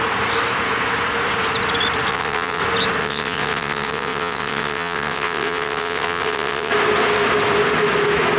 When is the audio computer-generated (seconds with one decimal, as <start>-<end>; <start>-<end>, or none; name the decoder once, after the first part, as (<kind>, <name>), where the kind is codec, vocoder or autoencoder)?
2.1-2.6 (vocoder, WaveNeXt); 3.0-6.7